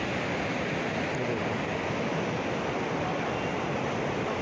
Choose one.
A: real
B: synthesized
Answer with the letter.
A